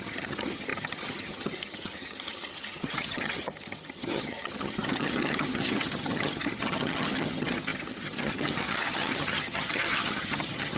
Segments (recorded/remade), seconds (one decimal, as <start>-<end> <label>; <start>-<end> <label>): 0.0-10.8 remade